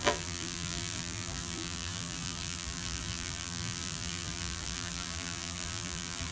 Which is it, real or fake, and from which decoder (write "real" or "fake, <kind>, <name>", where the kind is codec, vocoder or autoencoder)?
fake, vocoder, BigVGAN v2